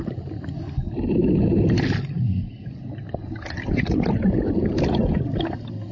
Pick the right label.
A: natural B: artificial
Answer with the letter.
A